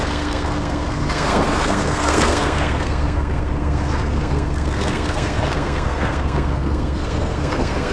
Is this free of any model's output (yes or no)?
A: no